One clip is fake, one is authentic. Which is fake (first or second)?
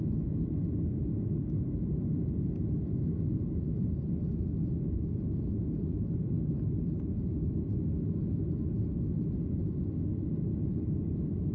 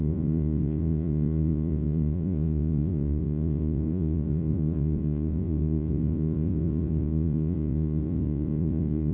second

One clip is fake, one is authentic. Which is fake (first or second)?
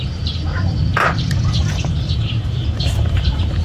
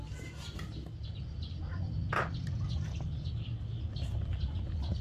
first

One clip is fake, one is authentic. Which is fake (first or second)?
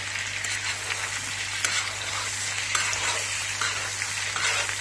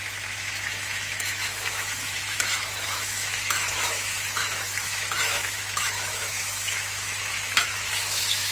second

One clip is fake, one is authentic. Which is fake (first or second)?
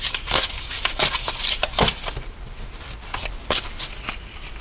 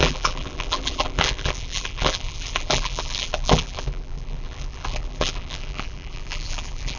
second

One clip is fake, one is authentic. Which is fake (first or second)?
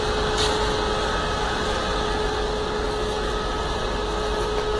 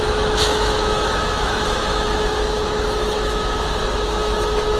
second